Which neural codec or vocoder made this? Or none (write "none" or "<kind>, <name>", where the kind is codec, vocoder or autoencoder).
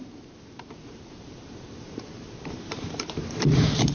vocoder, BigVGAN v2